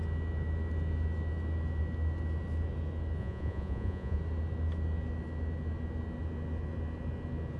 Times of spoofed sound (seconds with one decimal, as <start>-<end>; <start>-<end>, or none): 3.2-4.2